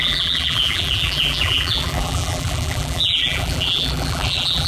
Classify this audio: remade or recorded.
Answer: remade